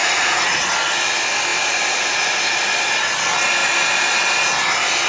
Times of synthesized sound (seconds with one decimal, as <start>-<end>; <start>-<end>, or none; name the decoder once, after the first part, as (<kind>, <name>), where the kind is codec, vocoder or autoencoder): 0.0-0.7 (vocoder, Vocos)